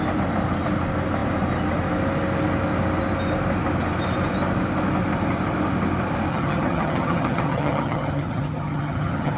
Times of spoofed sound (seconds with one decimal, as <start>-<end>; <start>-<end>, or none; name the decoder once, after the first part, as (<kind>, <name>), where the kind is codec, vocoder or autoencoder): 6.3-9.4 (vocoder, HiFi-GAN)